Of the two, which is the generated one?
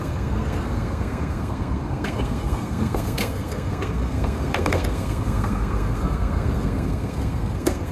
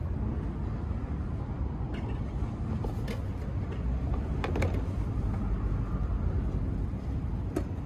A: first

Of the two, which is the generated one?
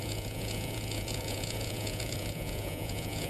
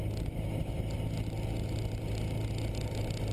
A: first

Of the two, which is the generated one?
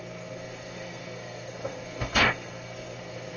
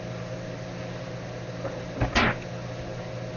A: first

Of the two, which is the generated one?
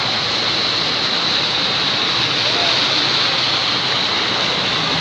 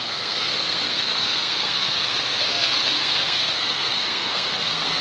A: second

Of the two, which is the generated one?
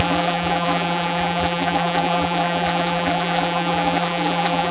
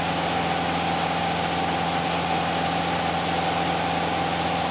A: first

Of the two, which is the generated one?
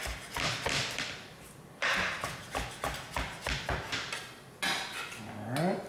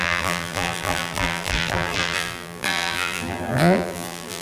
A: second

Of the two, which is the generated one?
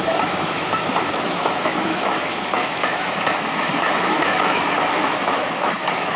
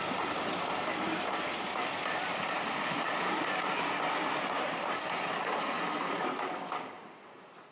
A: first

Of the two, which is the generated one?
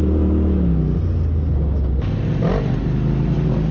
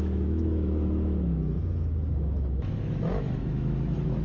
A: second